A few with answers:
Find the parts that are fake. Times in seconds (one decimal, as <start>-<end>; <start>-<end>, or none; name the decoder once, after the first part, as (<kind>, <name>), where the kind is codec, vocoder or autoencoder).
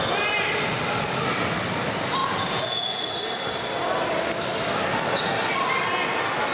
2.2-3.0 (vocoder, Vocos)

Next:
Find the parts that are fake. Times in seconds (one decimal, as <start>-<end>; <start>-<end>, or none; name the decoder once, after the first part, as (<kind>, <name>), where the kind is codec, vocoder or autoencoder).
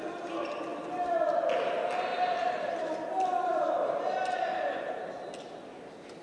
2.1-5.1 (vocoder, BigVGAN v2)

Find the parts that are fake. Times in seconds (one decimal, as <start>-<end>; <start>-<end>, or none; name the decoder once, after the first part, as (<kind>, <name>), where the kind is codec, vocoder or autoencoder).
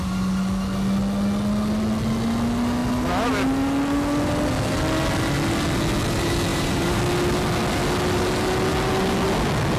6.5-7.0 (vocoder, BigVGAN v2)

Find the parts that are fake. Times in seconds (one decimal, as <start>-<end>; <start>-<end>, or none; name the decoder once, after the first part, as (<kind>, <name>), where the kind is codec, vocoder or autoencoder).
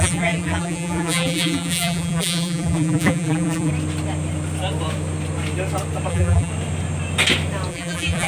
0.0-3.7 (vocoder, BigVGAN v2); 6.1-6.5; 7.7-8.3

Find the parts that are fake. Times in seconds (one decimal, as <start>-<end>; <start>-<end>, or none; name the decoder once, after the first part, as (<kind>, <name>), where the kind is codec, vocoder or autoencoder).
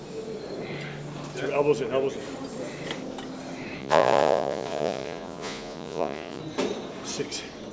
3.8-6.4 (vocoder, Vocos)